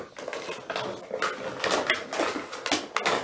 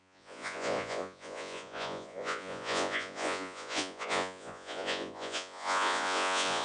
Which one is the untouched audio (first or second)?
first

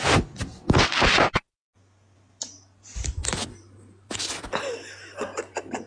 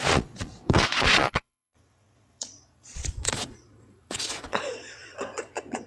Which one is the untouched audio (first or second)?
first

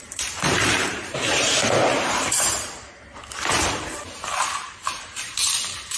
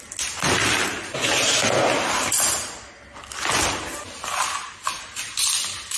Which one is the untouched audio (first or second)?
second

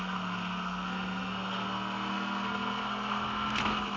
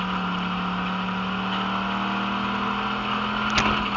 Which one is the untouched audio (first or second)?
second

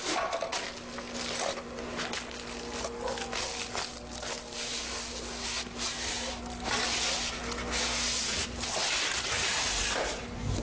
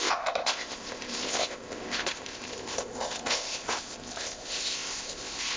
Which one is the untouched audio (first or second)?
first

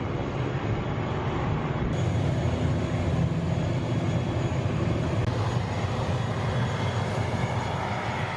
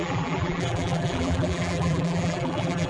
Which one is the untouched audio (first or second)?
first